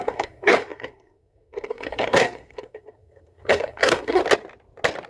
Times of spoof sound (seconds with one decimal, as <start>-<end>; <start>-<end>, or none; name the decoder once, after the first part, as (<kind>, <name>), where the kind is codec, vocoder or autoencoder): 0.0-4.2 (codec, SNAC)